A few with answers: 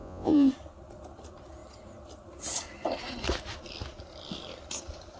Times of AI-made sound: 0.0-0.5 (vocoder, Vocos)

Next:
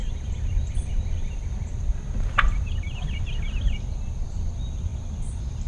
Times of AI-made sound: 0.0-3.4 (vocoder, BigVGAN v2)

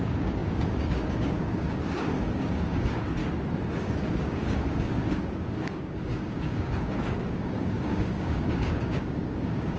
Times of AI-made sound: 0.0-3.2 (codec, DAC); 3.8-9.8

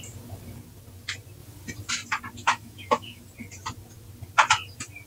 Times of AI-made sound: 2.4-3.2 (autoencoder, DAC-VAE)

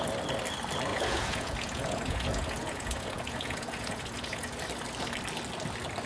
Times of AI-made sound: 0.9-4.6 (vocoder, Vocos)

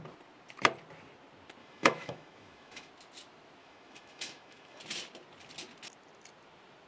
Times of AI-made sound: 1.6-2.9 (autoencoder, DAC-VAE); 3.6-4.8

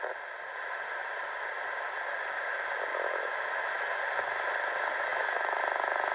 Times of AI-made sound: 2.9-4.0 (autoencoder, DAC-VAE); 5.1-5.6

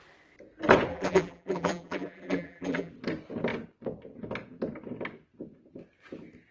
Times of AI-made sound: 0.9-2.9 (vocoder, BigVGAN v2)